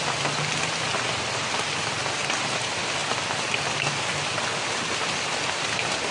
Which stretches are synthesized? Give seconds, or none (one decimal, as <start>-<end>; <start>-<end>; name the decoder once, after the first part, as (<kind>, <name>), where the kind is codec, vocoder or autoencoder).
none